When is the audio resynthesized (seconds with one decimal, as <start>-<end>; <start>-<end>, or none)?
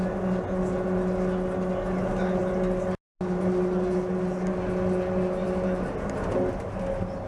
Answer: none